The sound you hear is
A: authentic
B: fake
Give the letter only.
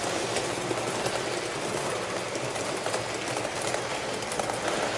A